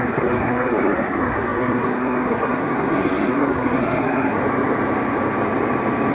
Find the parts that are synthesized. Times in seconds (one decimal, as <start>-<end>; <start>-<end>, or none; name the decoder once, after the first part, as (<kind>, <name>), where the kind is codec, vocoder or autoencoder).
0.0-4.4 (codec, SNAC)